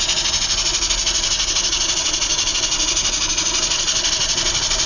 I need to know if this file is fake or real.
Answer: real